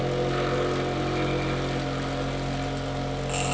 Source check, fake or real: real